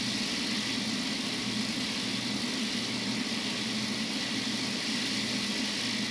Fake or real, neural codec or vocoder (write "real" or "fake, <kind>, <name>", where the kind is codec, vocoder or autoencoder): real